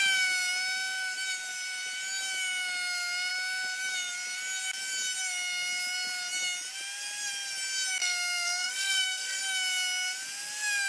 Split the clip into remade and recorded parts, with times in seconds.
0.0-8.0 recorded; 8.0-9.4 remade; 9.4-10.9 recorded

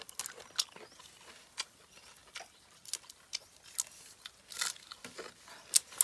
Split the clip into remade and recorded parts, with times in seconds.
0.0-6.0 recorded